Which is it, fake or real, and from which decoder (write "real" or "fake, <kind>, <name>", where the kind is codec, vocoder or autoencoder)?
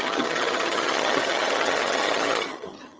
fake, vocoder, HiFi-GAN